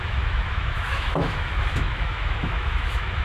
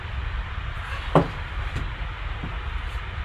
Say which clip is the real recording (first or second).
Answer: second